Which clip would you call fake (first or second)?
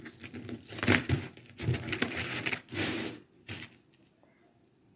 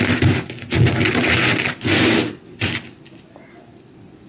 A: first